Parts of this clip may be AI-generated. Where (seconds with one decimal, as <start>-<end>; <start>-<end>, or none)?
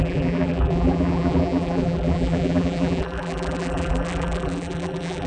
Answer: 0.0-5.3